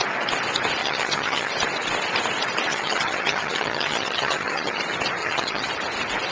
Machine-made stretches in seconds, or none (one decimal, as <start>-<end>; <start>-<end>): 0.8-1.5; 2.7-4.8; 5.2-5.7